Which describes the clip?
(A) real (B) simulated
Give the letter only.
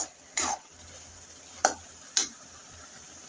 B